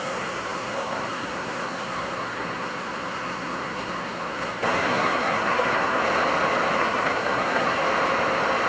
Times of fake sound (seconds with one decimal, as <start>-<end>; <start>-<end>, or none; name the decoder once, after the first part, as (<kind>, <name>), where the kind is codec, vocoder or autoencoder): 0.0-6.0 (codec, SNAC); 6.8-7.8